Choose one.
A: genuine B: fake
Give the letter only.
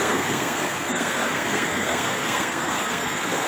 B